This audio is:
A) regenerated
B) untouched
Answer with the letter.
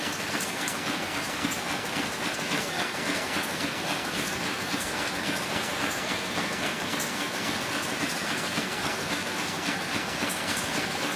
A